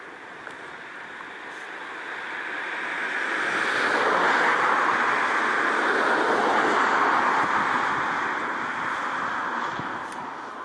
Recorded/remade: recorded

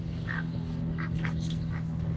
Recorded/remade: remade